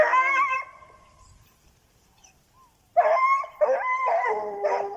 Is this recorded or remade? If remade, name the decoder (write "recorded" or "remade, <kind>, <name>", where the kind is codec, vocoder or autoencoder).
recorded